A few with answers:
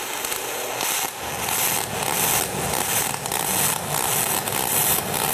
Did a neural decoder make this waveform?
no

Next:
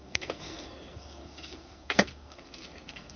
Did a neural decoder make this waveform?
yes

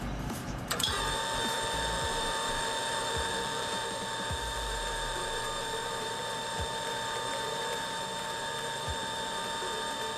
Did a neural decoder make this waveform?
yes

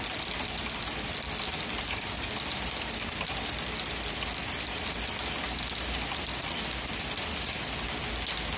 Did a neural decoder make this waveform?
no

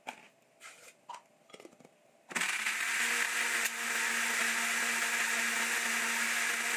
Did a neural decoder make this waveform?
no